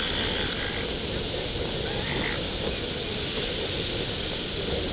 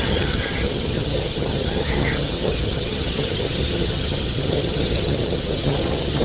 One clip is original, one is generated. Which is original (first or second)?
first